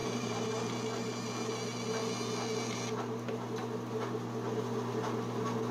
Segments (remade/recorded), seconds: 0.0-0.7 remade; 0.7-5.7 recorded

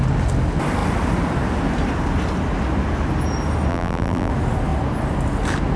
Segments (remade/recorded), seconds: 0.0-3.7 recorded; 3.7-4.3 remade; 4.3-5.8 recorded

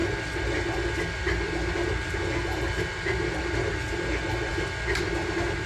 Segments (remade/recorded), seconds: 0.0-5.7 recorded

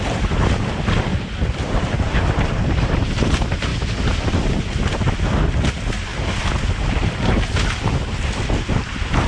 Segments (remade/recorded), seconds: 0.0-1.1 recorded; 1.1-3.0 remade; 3.0-6.1 recorded; 6.1-7.4 remade; 7.4-9.3 recorded

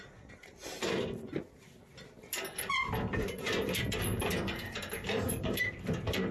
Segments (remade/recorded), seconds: 0.0-4.1 recorded; 4.1-5.7 remade; 5.7-6.3 recorded

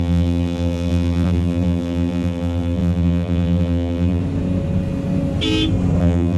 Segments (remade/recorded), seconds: 0.0-4.2 remade; 4.2-6.0 recorded; 6.0-6.4 remade

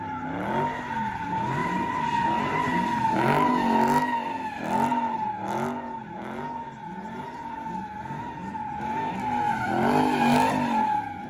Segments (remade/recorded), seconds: 0.0-1.6 recorded; 1.6-3.5 remade; 3.5-11.3 recorded